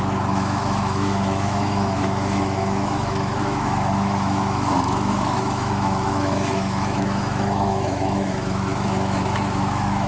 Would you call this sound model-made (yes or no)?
yes